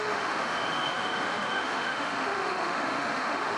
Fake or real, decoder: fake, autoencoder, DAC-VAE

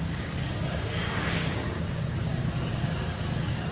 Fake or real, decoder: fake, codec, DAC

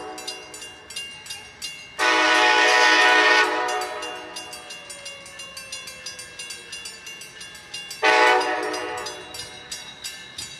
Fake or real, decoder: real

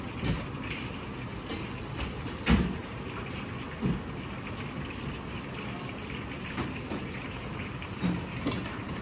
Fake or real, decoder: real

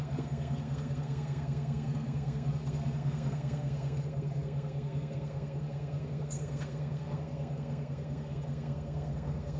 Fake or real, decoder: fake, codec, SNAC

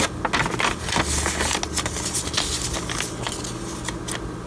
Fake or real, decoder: real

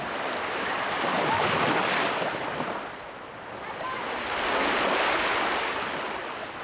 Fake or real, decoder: real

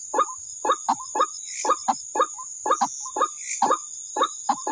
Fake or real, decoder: real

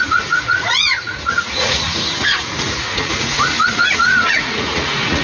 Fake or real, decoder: fake, vocoder, Vocos